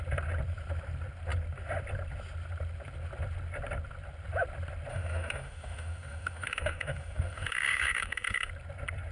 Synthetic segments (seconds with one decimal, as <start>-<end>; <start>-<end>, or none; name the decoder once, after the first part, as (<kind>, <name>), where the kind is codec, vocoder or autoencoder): 4.9-8.5 (autoencoder, DAC-VAE)

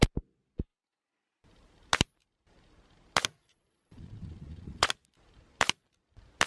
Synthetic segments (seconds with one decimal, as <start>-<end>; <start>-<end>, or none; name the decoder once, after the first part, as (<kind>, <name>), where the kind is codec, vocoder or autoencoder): 3.4-4.9 (vocoder, Vocos)